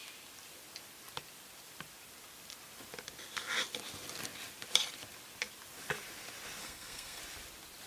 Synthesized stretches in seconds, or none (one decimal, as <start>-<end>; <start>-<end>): 6.6-7.2